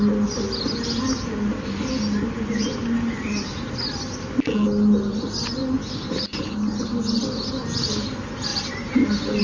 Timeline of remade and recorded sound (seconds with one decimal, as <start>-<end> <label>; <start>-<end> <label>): 0.0-9.4 recorded